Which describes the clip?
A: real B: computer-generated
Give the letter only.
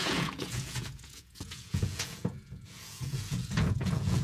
B